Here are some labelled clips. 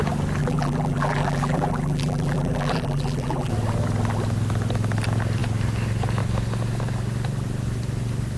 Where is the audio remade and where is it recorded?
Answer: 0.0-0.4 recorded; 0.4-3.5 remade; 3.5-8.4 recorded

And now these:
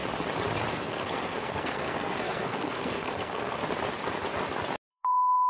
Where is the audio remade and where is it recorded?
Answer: 0.0-0.7 recorded; 0.7-3.6 remade; 3.6-4.9 recorded; 4.9-5.5 remade